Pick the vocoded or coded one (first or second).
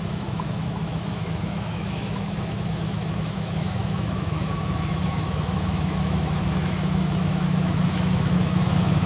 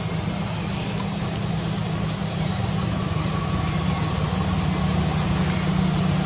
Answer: first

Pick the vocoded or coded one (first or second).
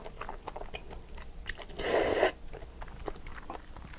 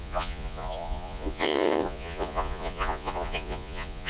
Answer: second